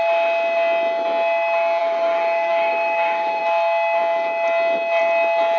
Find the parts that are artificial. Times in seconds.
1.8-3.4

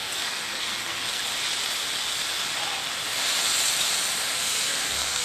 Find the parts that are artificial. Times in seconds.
0.0-1.2; 4.3-5.2

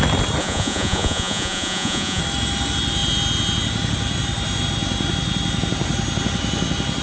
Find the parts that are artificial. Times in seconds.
0.4-2.2

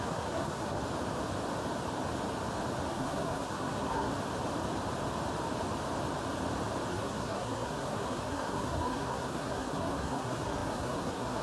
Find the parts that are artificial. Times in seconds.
0.0-0.8; 2.9-4.1; 6.9-11.4

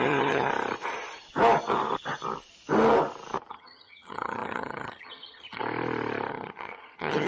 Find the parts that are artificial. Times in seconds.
0.0-0.5; 3.5-5.6; 6.3-7.3

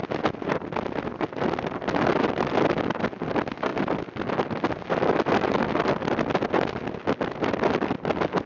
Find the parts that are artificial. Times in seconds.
none